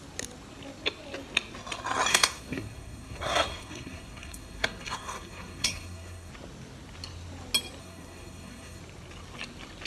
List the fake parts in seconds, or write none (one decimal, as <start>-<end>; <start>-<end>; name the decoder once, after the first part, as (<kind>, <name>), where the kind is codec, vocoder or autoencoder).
2.1-6.3 (codec, SNAC); 7.8-8.8